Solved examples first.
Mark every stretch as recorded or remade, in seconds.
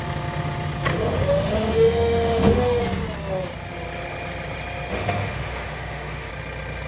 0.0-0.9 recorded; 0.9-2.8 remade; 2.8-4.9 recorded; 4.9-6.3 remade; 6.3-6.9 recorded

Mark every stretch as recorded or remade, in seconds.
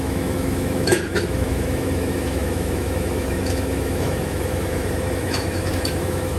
0.0-6.4 remade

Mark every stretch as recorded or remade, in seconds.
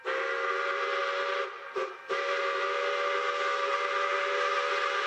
0.0-5.1 recorded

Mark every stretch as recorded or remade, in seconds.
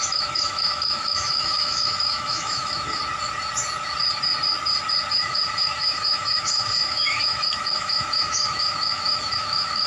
0.0-3.0 remade; 3.0-5.1 recorded; 5.1-9.9 remade